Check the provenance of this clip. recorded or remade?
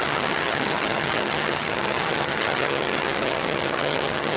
remade